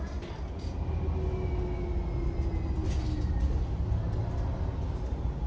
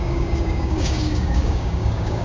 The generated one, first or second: second